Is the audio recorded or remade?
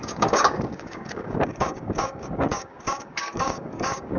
remade